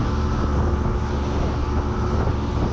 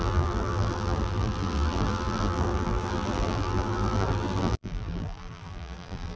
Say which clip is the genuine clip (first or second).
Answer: first